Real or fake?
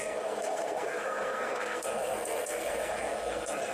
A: fake